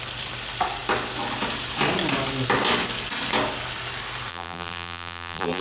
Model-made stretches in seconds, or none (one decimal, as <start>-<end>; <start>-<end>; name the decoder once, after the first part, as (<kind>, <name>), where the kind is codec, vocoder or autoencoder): 4.3-5.6 (vocoder, BigVGAN v2)